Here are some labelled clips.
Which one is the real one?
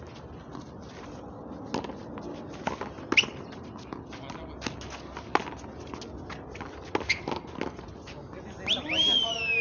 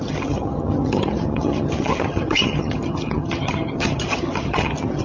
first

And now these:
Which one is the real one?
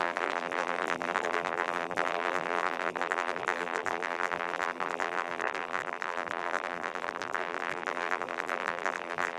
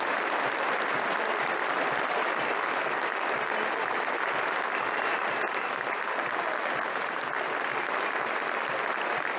second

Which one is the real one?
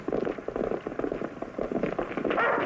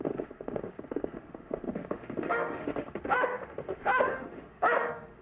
first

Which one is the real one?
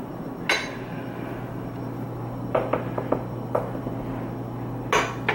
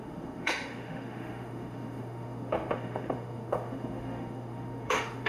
first